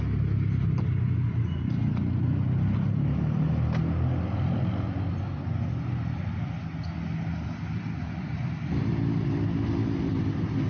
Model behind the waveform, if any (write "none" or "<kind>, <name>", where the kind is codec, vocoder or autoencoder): none